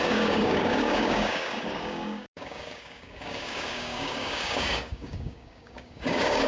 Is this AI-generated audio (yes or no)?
yes